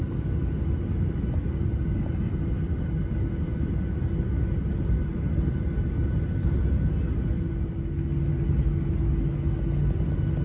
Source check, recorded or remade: recorded